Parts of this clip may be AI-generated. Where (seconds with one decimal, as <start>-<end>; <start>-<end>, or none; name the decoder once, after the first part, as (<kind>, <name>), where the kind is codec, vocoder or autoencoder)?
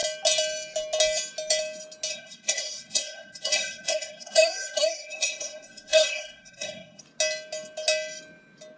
2.1-7.0 (codec, SNAC)